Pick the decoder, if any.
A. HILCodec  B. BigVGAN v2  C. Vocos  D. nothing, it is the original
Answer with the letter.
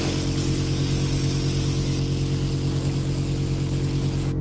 D